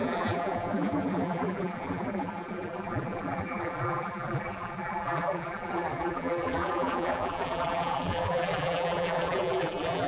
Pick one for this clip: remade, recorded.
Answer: remade